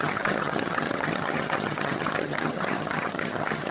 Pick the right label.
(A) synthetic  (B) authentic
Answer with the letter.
A